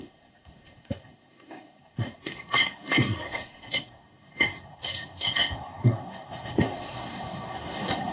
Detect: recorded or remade remade